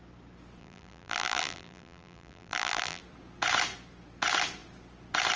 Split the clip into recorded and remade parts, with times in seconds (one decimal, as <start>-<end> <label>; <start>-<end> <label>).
0.0-0.6 recorded; 0.6-3.0 remade; 3.0-5.4 recorded